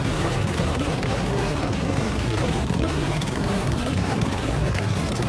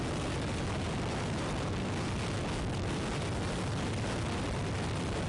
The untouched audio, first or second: second